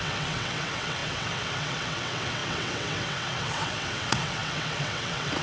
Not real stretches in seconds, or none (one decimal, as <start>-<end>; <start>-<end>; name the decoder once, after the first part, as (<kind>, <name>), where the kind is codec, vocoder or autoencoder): 0.0-5.4 (vocoder, WaveNeXt)